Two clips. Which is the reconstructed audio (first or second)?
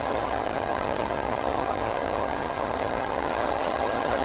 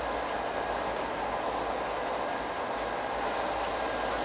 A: first